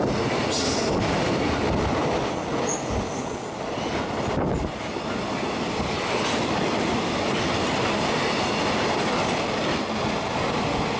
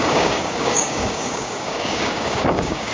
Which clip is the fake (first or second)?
second